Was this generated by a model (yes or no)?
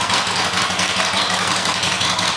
yes